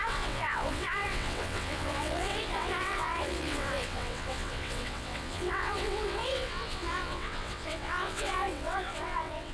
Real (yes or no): no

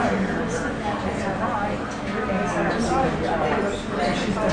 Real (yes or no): yes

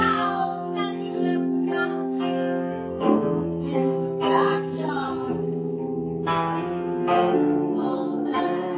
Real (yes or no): no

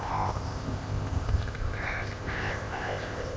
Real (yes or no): no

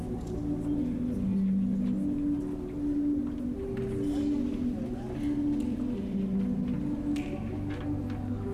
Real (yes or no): yes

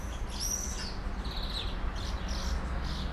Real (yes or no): yes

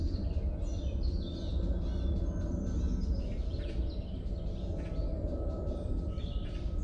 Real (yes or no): yes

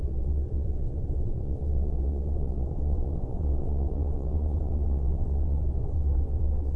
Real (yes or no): no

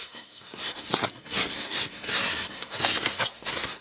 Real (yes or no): no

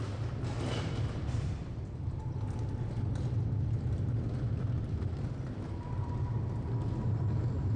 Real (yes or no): yes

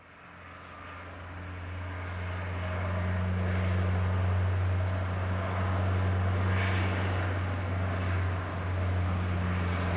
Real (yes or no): yes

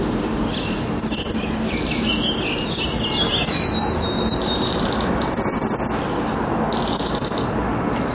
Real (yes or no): yes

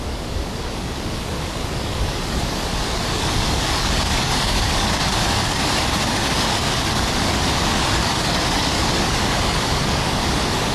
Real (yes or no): no